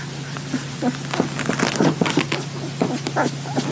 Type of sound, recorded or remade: recorded